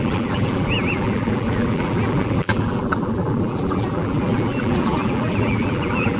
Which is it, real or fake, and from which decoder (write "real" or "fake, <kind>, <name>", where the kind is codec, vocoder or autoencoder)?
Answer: fake, vocoder, BigVGAN v2